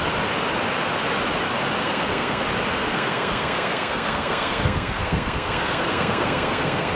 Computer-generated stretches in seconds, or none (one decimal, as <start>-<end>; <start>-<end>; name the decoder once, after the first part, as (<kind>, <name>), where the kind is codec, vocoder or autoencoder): 1.8-2.4 (codec, SNAC); 2.8-7.0